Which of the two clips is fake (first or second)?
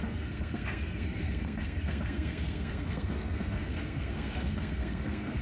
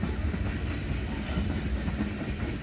first